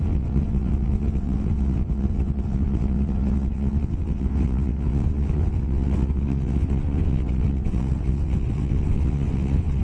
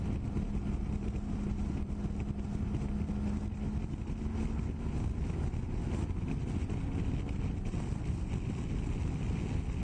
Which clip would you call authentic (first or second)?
second